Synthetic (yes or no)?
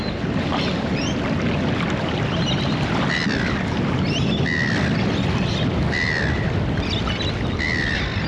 no